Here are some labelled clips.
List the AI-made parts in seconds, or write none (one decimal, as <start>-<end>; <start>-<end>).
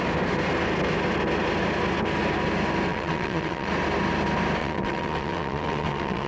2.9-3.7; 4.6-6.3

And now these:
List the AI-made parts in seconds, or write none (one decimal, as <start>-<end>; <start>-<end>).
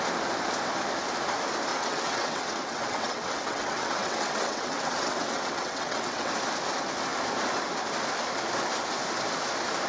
1.7-6.3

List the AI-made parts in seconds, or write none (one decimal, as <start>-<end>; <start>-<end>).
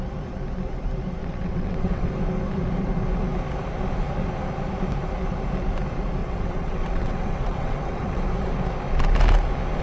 1.2-2.1; 6.2-8.2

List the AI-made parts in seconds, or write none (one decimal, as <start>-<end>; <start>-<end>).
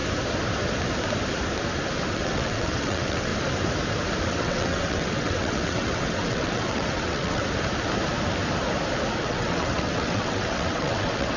2.1-3.3; 4.3-7.4; 9.2-11.4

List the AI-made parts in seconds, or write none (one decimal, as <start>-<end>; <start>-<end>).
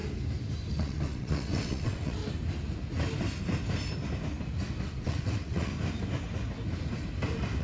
0.7-2.2; 5.0-5.7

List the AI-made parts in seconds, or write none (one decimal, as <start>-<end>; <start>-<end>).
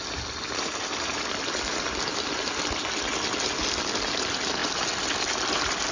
none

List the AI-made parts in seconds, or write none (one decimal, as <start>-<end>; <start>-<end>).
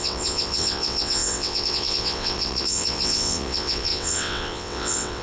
0.0-5.2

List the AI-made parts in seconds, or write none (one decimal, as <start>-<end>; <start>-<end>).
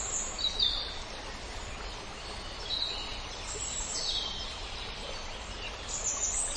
none